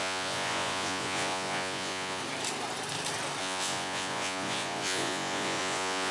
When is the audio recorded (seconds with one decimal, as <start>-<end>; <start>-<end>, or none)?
2.2-3.4